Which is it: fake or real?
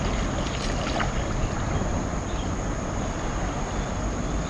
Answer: real